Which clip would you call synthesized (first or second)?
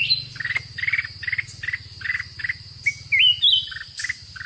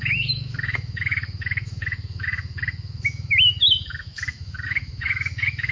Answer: second